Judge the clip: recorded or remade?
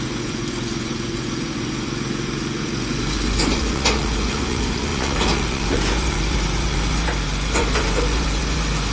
remade